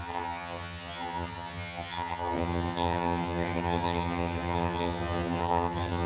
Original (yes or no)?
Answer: no